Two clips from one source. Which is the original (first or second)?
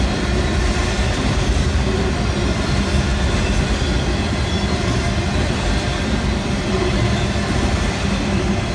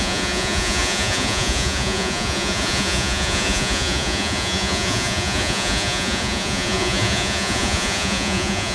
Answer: first